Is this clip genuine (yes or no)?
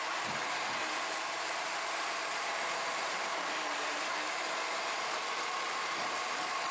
no